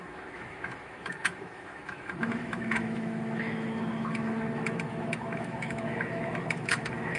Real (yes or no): no